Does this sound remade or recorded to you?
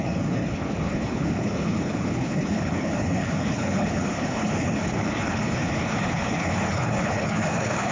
remade